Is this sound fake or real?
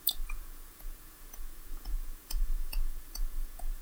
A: fake